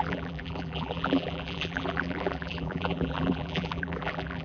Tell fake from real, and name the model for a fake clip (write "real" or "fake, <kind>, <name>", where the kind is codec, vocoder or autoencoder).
fake, vocoder, BigVGAN v2